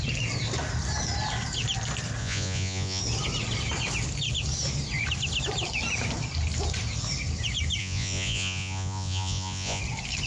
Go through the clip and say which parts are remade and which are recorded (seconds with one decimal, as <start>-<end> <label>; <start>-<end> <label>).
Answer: 0.0-2.2 recorded; 2.2-3.0 remade; 3.0-7.8 recorded; 7.8-9.8 remade; 9.8-10.3 recorded